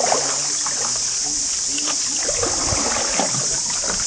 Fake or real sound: real